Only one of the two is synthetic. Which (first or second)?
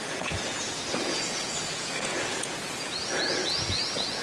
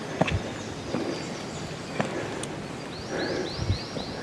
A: first